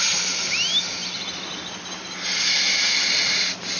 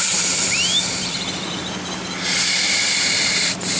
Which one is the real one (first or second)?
first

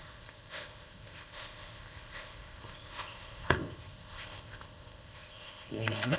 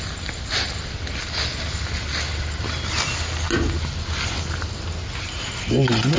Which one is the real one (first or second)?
second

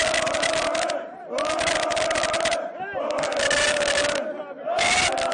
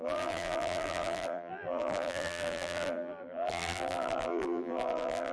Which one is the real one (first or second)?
first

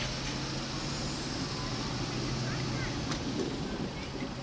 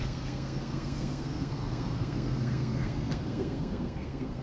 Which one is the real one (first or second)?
first